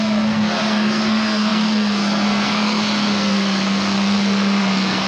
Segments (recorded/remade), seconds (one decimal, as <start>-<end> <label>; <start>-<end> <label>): 0.0-5.1 remade